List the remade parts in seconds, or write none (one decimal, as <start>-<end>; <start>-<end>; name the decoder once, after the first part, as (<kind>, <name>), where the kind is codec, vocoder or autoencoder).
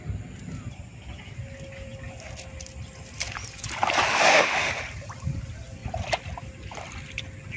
4.1-4.7 (autoencoder, DAC-VAE)